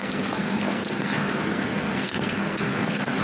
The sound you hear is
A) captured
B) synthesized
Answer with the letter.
B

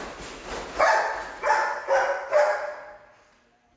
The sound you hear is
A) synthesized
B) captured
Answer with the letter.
B